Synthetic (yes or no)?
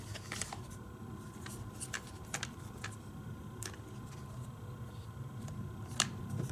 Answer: no